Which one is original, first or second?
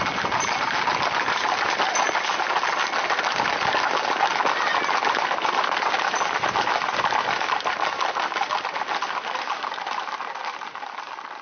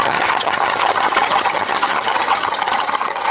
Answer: first